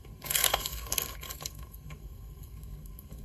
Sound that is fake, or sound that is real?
fake